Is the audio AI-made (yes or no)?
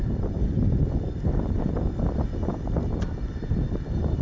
no